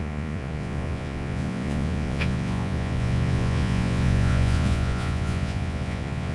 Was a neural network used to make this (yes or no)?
yes